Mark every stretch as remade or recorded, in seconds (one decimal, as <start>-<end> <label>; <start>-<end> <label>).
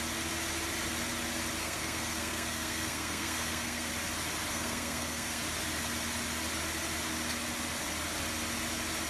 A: 0.0-1.6 recorded; 1.6-3.9 remade; 3.9-4.5 recorded; 4.5-5.4 remade; 5.4-9.1 recorded